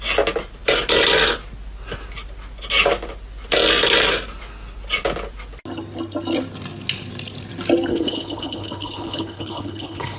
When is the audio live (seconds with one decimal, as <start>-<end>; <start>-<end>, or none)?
0.0-7.9